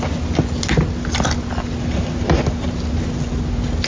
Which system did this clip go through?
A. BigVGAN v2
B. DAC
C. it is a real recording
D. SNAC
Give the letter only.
C